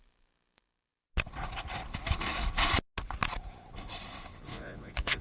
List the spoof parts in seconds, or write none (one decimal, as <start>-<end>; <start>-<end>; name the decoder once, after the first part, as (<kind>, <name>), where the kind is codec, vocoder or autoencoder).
4.5-5.2 (vocoder, Vocos)